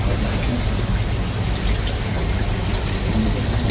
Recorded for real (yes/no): yes